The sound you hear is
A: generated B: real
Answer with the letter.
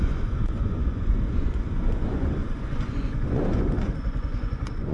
A